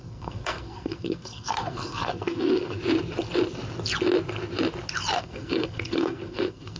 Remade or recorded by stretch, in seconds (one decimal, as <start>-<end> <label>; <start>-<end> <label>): 0.0-2.8 remade; 2.8-5.2 recorded; 5.2-6.8 remade